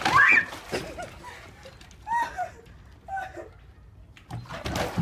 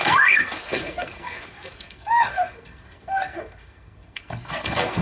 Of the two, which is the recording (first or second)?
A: first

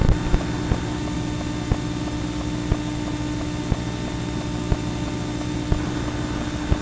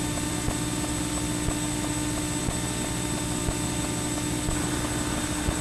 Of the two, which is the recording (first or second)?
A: first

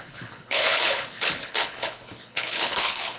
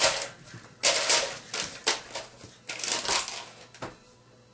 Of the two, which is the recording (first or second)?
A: second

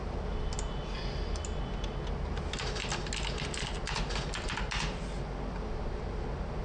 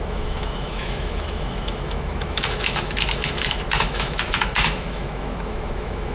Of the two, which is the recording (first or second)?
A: first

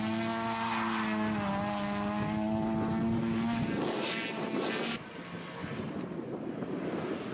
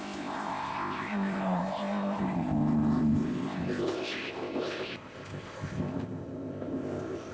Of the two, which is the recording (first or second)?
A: first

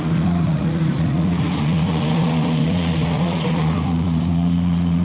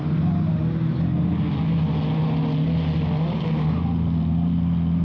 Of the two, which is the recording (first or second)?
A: second